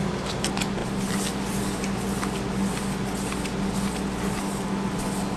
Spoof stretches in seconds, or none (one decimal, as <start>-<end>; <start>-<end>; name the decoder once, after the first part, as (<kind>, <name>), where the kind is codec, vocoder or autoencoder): none